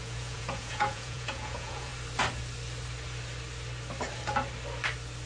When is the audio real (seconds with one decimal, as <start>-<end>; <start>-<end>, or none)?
1.9-5.3